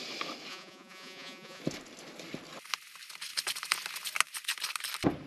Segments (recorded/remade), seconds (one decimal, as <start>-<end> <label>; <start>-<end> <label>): 0.0-0.5 recorded; 0.5-1.6 remade; 1.6-5.3 recorded